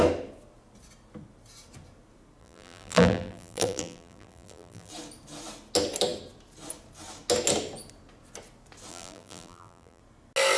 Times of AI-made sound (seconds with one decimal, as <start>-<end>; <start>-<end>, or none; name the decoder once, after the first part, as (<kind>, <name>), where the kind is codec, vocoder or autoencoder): 2.4-4.9 (vocoder, BigVGAN v2); 8.9-10.0